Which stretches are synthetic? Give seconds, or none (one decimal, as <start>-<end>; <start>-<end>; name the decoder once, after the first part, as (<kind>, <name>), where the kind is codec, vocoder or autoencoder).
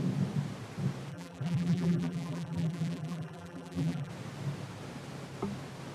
1.1-4.1 (vocoder, BigVGAN v2)